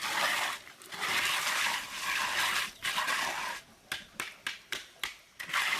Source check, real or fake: real